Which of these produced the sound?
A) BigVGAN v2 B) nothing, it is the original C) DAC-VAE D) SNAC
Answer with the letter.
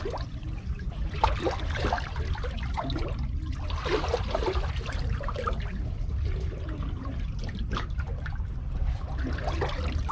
A